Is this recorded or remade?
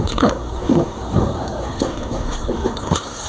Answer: remade